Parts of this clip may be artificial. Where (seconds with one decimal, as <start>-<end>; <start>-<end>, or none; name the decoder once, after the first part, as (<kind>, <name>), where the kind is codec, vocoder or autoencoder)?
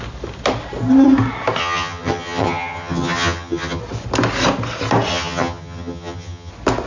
1.6-3.8 (vocoder, HiFi-GAN); 5.1-6.5